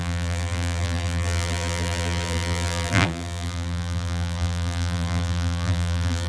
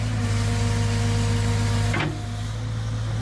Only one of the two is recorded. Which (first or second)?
second